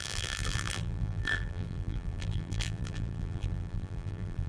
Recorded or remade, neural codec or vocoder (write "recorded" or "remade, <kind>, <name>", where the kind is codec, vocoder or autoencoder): remade, vocoder, BigVGAN v2